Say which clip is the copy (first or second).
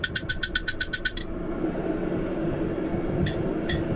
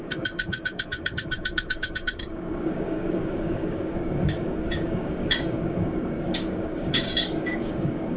second